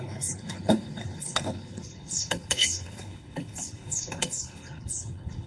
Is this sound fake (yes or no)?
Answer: yes